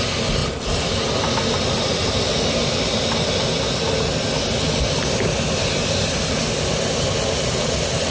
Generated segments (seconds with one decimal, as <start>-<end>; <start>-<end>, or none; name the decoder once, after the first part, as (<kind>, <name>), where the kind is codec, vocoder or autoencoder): 0.4-1.0 (vocoder, BigVGAN v2)